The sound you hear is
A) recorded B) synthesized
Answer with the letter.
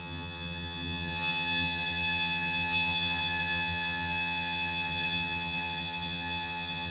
B